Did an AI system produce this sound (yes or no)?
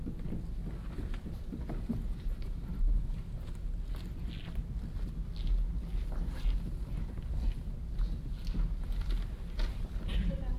no